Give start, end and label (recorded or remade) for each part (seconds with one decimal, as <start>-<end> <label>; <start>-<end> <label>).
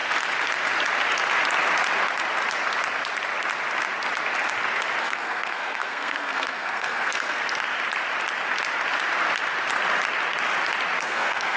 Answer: 0.0-5.0 recorded; 5.0-7.4 remade; 7.4-11.0 recorded; 11.0-11.6 remade